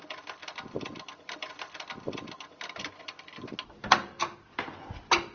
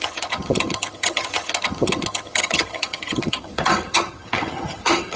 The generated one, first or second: second